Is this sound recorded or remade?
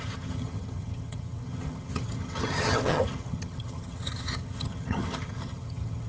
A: remade